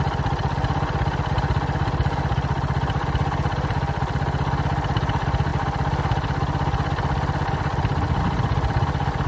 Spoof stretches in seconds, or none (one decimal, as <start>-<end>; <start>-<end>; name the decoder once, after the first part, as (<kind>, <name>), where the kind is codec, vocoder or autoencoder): none